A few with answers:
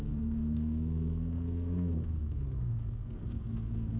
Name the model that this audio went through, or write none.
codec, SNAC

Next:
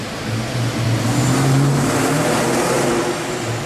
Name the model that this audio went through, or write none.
vocoder, BigVGAN v2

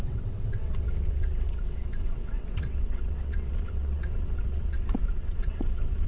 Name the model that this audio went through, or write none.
vocoder, WaveNeXt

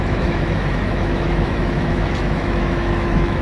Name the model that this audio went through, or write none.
autoencoder, DAC-VAE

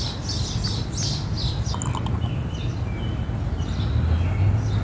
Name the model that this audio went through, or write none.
none